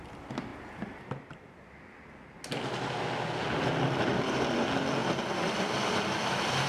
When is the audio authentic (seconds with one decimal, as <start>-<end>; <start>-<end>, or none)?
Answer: 0.0-0.5; 2.4-6.7